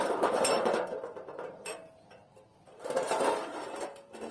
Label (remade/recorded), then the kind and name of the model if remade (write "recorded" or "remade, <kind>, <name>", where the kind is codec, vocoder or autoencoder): remade, vocoder, BigVGAN v2